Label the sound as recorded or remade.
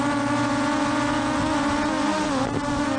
recorded